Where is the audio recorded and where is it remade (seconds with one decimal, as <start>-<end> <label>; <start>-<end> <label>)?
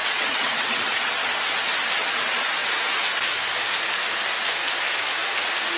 0.0-1.0 remade; 1.0-5.8 recorded